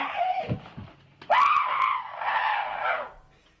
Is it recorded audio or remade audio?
recorded